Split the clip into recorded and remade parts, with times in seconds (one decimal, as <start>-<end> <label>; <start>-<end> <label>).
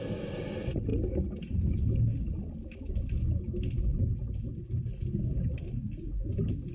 0.0-6.7 recorded